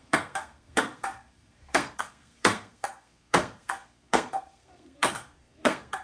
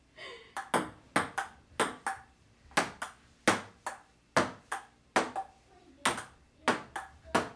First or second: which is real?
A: second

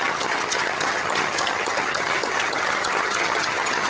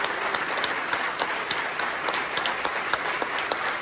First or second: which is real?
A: second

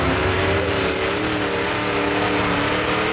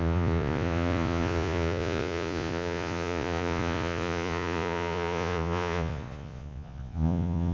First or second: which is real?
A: first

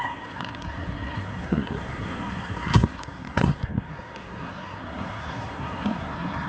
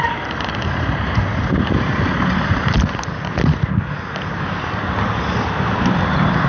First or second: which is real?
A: second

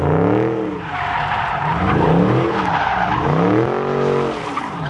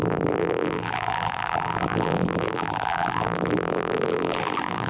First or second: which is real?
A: first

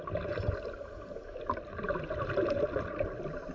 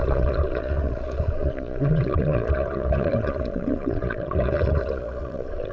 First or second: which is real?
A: first